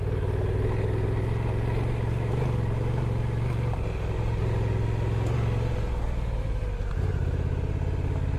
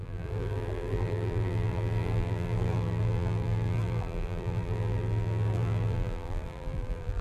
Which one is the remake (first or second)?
second